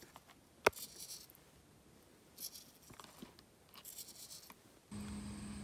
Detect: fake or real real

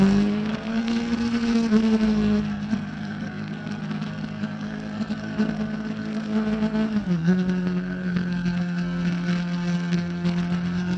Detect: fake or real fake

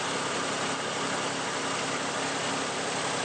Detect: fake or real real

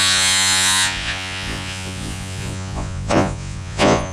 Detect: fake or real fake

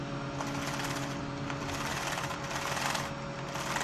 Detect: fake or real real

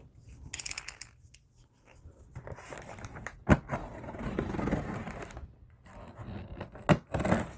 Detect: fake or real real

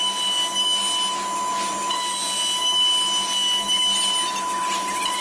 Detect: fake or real real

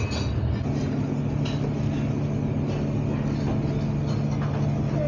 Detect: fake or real real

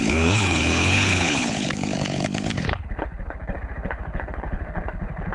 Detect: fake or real fake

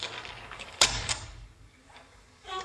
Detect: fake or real fake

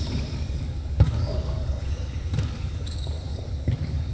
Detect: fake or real fake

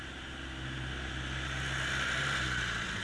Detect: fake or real real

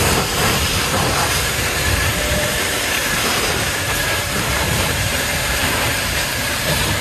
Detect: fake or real fake